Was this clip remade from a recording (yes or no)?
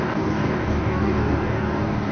yes